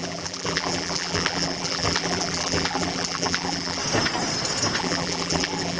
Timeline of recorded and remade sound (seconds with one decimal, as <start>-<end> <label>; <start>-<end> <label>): 0.0-3.8 remade; 3.8-4.8 recorded; 4.8-5.8 remade